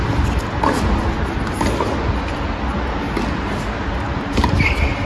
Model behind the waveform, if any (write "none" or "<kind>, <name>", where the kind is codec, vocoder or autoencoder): none